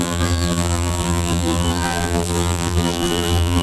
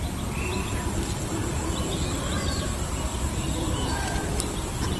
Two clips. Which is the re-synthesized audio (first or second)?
first